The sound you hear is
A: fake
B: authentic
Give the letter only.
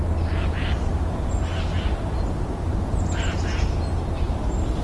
B